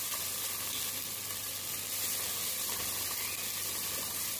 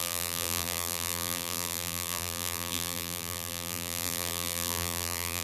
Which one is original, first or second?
first